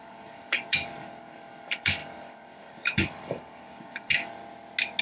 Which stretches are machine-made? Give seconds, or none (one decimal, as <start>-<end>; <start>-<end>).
0.0-4.4